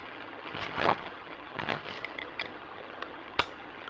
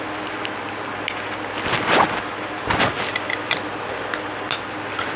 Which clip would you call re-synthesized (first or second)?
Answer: first